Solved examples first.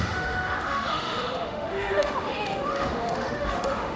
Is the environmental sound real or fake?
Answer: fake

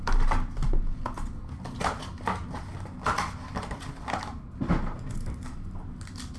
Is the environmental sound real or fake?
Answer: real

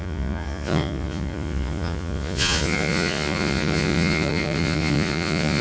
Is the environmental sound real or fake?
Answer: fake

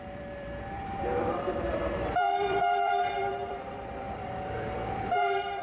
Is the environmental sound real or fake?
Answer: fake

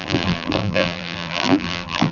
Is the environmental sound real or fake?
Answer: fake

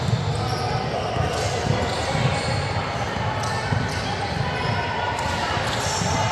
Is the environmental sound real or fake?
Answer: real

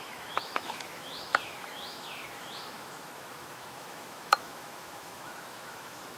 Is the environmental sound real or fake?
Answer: fake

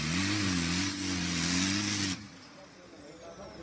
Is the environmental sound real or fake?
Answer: real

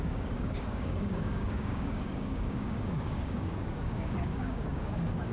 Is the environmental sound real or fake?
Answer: fake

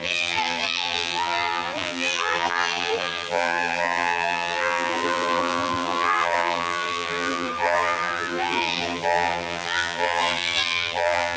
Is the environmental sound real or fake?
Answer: fake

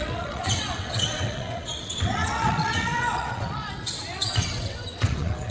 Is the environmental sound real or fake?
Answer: fake